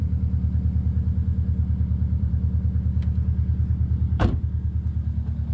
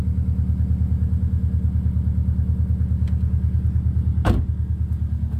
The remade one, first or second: first